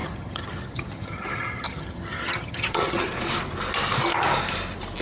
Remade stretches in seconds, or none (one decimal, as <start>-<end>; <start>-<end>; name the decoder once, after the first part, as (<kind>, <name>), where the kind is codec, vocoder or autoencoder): 0.0-3.0 (vocoder, HiFi-GAN)